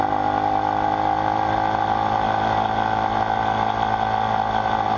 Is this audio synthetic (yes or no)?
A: no